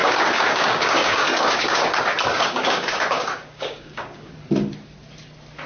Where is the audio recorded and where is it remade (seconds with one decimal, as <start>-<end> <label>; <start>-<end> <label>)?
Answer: 0.0-1.8 remade; 1.8-2.3 recorded; 2.3-4.3 remade; 4.3-5.7 recorded

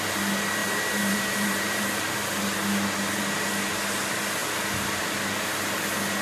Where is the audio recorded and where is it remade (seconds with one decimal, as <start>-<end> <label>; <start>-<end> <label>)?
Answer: 0.0-0.6 recorded; 0.6-2.1 remade; 2.1-6.2 recorded

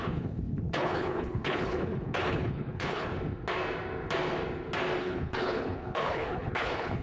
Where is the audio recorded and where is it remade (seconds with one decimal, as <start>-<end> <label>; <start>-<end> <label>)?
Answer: 0.0-3.1 remade; 3.1-5.0 recorded; 5.0-7.0 remade

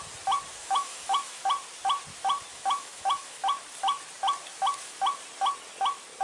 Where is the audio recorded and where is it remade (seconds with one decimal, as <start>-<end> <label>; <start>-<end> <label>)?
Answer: 0.0-0.6 recorded; 0.6-1.4 remade; 1.4-2.5 recorded; 2.5-3.4 remade; 3.4-6.2 recorded